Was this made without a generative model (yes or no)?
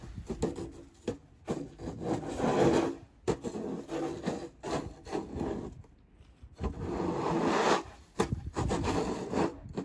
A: yes